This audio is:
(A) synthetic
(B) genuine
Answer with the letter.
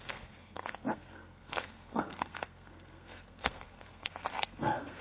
A